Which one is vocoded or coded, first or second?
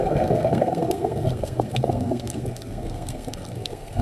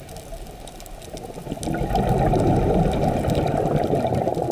first